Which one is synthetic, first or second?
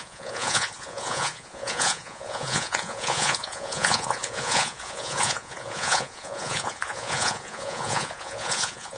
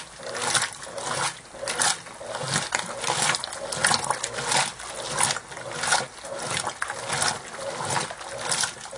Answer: first